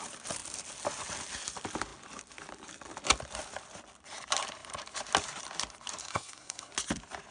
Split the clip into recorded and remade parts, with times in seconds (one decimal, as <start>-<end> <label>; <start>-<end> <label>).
0.0-6.0 recorded; 6.0-6.7 remade; 6.7-7.3 recorded